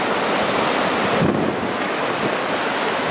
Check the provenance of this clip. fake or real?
real